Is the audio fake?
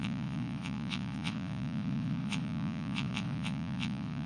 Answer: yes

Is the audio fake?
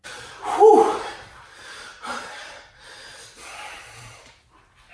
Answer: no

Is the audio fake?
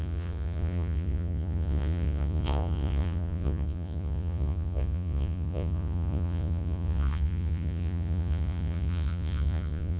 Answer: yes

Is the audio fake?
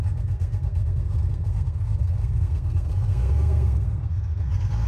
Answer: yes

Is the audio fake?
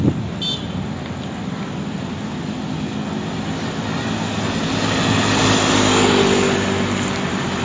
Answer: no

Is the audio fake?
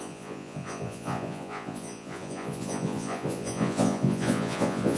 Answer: yes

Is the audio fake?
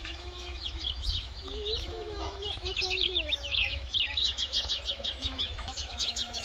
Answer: yes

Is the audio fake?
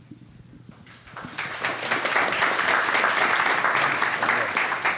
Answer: no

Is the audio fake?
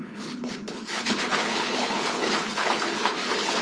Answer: yes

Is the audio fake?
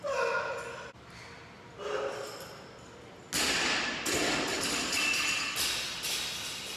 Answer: no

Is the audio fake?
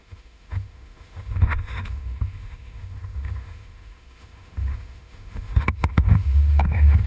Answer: yes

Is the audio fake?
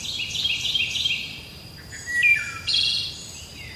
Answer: yes